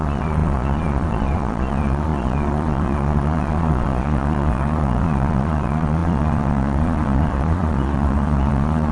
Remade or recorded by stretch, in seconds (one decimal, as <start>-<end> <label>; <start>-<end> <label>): 0.0-8.9 remade